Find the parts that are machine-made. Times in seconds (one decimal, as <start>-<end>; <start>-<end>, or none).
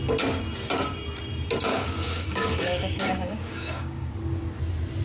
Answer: 1.7-4.1